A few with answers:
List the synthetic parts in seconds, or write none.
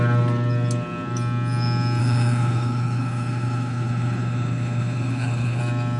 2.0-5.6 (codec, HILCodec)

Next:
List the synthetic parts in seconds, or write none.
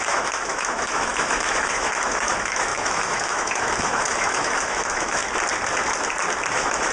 0.0-5.2 (autoencoder, DAC-VAE); 6.5-6.9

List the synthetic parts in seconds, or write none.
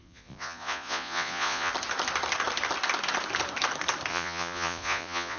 0.0-1.7 (vocoder, Vocos); 4.1-5.4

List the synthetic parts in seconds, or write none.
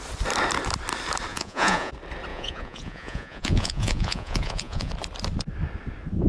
1.3-1.9 (vocoder, Vocos); 2.3-4.9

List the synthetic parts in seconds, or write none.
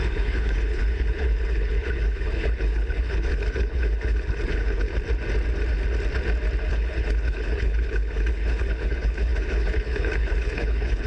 0.0-4.9 (codec, HILCodec); 6.7-11.1